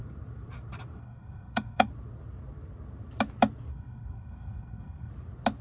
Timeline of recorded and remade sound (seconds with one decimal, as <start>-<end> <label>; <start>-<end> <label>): 0.0-1.0 recorded; 1.0-1.9 remade; 1.9-3.7 recorded; 3.7-5.1 remade; 5.1-5.6 recorded